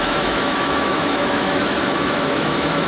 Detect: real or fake fake